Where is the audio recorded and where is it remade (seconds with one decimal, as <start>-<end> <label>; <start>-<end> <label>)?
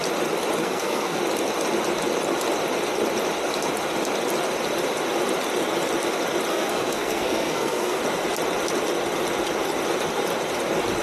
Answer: 0.0-0.6 recorded; 0.6-1.2 remade; 1.2-6.5 recorded; 6.5-8.0 remade; 8.0-11.0 recorded